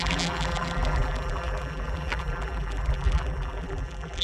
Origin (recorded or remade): remade